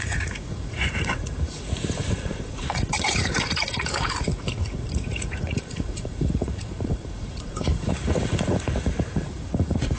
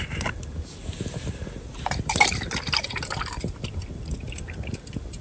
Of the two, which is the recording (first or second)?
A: second